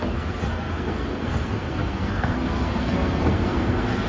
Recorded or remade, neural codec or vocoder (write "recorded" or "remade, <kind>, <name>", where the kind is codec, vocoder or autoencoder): remade, codec, SNAC